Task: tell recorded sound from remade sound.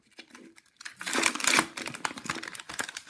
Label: recorded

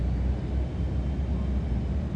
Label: recorded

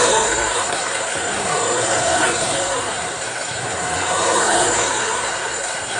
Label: remade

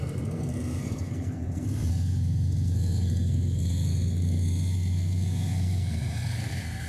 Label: remade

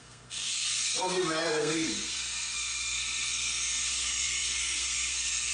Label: remade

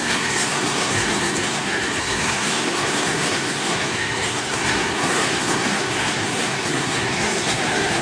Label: remade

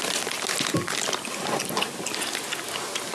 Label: recorded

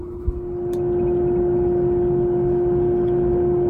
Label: recorded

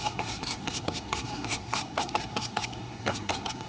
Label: remade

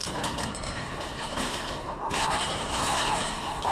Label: remade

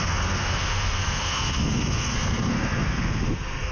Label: remade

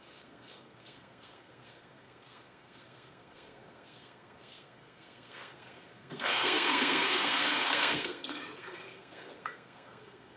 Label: remade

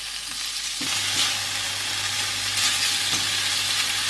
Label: recorded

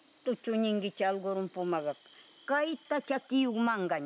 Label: recorded